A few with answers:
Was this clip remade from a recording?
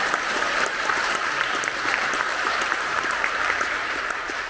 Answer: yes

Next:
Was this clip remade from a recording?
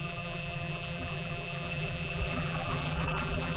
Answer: yes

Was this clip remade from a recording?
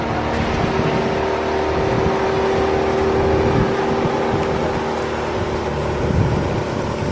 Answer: no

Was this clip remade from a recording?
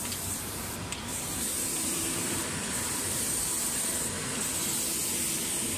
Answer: no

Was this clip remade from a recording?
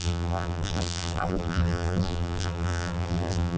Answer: yes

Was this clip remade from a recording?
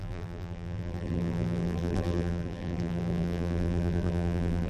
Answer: yes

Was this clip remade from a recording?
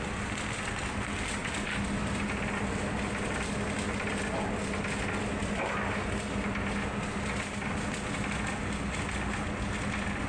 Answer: no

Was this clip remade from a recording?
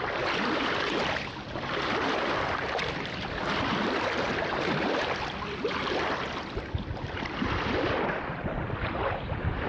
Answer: yes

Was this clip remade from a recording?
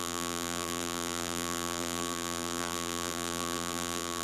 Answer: yes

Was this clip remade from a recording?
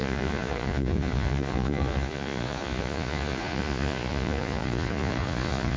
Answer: yes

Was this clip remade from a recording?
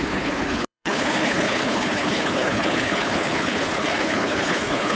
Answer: yes